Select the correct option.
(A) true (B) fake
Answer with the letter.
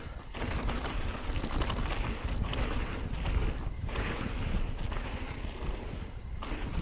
A